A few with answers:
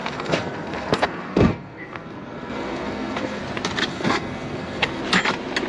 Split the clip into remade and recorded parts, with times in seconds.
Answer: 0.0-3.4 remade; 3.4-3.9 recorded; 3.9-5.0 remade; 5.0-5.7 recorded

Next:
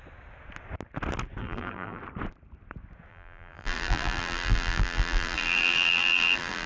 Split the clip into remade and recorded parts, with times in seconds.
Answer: 0.0-1.4 recorded; 1.4-2.0 remade; 2.0-3.1 recorded; 3.1-6.7 remade

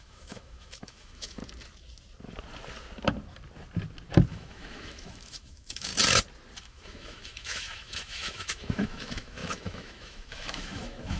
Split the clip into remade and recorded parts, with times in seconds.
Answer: 0.0-1.4 remade; 1.4-4.3 recorded; 4.3-5.9 remade; 5.9-6.6 recorded; 6.6-11.2 remade

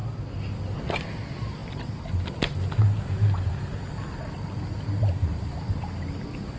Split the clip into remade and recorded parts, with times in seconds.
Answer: 0.0-6.6 recorded